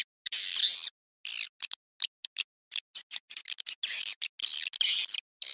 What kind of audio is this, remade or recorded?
recorded